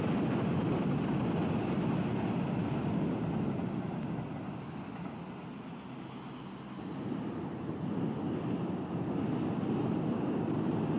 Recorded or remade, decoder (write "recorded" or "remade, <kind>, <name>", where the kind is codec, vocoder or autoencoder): recorded